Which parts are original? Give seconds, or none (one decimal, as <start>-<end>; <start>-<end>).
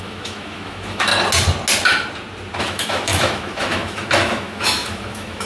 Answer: 1.1-2.6